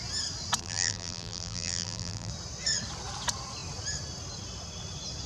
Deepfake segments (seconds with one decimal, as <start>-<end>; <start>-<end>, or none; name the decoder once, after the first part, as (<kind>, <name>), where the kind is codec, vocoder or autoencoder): 0.6-2.3 (vocoder, BigVGAN v2)